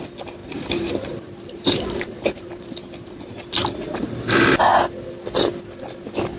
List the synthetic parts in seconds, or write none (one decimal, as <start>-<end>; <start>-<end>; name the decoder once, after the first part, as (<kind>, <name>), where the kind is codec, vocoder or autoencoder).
0.4-4.2 (vocoder, BigVGAN v2)